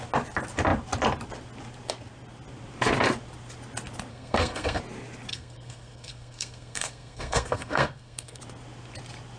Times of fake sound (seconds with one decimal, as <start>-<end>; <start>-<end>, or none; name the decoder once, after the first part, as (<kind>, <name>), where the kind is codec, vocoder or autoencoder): 4.1-4.8 (codec, SNAC); 5.3-8.4